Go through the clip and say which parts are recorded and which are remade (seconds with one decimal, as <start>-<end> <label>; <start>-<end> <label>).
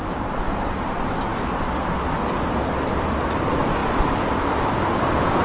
0.0-1.3 remade; 1.3-3.0 recorded; 3.0-5.4 remade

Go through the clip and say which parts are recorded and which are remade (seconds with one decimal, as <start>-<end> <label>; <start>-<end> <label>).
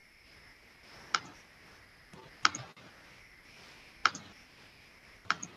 0.0-3.3 recorded; 3.3-4.0 remade; 4.0-5.0 recorded; 5.0-5.6 remade